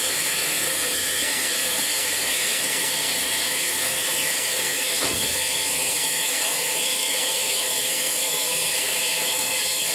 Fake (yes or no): yes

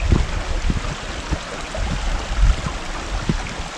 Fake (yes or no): no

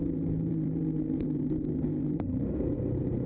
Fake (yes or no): yes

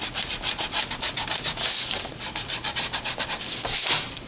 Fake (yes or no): no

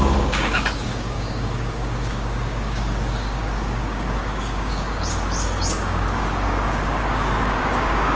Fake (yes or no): yes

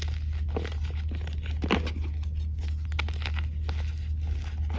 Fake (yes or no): no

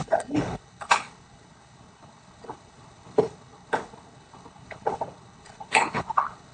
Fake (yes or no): yes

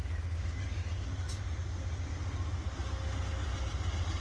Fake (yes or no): no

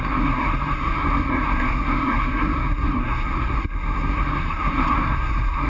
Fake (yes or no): yes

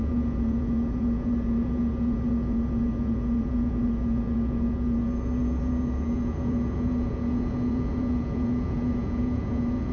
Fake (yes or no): yes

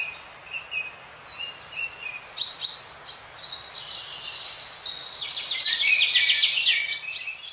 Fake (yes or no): no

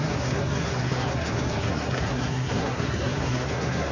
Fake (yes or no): yes